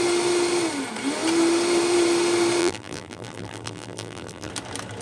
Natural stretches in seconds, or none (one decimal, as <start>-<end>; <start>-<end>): 0.0-2.6; 4.5-5.0